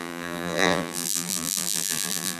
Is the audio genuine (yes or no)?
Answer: no